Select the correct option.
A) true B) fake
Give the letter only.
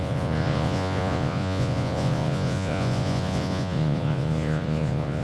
B